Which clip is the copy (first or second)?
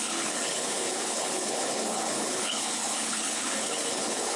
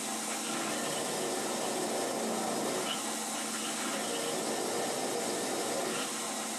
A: first